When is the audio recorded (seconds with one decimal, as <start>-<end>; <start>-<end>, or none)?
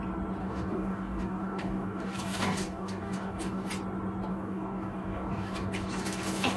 0.0-0.4; 3.7-4.3